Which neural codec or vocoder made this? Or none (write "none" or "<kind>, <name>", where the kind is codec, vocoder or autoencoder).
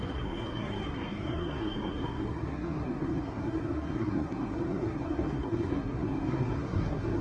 codec, SNAC